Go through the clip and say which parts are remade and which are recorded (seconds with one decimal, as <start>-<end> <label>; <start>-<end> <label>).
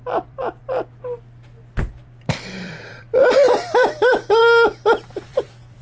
0.0-0.6 remade; 0.6-2.0 recorded; 2.0-4.4 remade; 4.4-5.3 recorded; 5.3-5.8 remade